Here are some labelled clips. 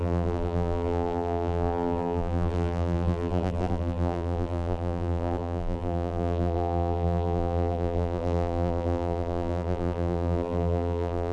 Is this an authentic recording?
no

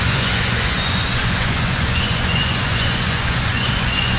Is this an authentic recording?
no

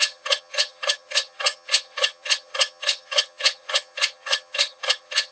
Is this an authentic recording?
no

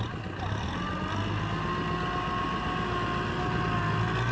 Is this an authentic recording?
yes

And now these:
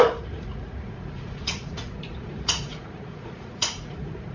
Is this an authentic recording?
no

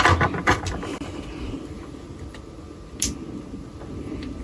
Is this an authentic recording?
yes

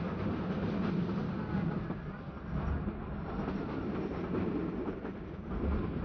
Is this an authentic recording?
yes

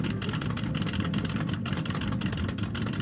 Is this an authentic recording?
no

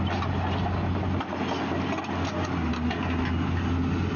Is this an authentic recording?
yes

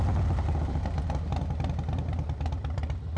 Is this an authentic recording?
yes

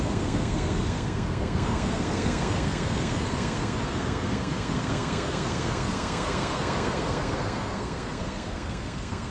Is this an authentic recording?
no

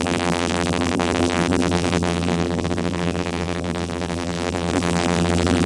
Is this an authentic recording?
no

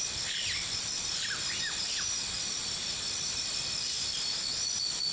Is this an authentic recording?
yes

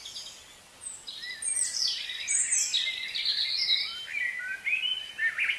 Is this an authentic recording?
yes